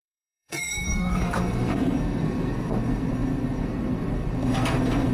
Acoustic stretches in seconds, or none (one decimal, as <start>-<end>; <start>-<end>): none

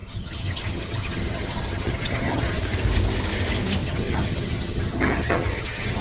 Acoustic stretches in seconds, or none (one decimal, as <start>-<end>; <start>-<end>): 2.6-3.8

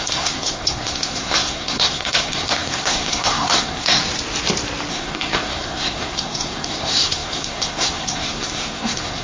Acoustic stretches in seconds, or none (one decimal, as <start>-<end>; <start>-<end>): 4.0-4.9

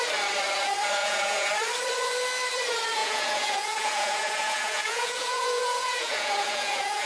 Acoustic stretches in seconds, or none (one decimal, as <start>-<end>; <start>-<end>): 0.0-1.0; 1.5-3.0

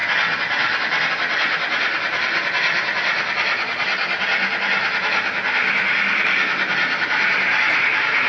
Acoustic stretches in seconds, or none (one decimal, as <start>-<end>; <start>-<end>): 0.0-8.3